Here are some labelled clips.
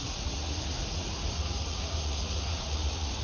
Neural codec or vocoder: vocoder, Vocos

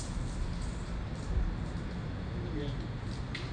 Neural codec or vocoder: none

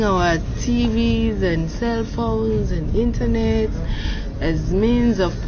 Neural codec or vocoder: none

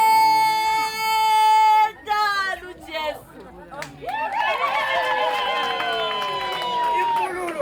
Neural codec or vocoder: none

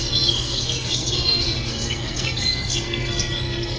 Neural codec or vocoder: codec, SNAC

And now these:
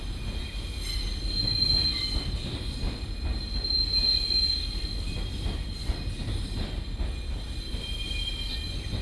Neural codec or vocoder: none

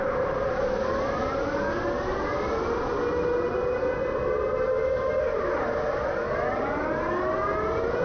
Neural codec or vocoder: none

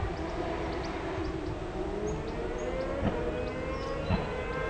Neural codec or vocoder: none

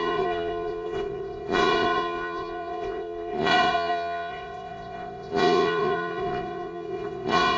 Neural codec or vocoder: vocoder, Vocos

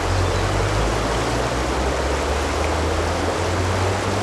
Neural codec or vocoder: none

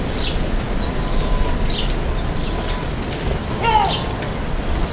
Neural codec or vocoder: none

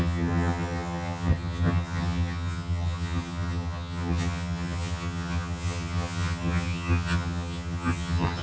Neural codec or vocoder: vocoder, HiFi-GAN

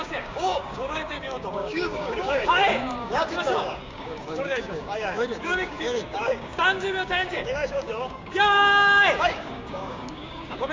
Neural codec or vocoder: codec, DAC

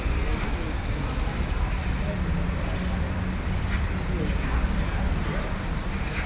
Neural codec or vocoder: none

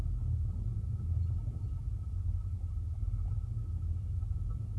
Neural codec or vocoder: none